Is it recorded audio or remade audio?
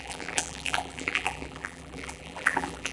remade